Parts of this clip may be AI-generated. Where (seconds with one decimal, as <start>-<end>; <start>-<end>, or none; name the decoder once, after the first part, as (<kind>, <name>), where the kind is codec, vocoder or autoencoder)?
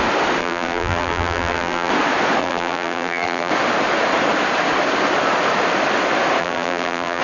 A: 0.4-1.9 (vocoder, BigVGAN v2); 2.4-3.5; 6.4-7.2